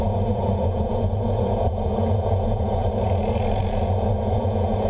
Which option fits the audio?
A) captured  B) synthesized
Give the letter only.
B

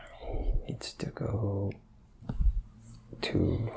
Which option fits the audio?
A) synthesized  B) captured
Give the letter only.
B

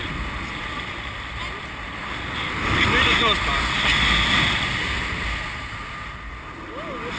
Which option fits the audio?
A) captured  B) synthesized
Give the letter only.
A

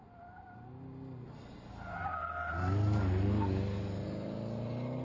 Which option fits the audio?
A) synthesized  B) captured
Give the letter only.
B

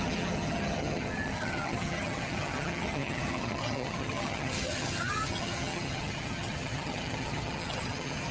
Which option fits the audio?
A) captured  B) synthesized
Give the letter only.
B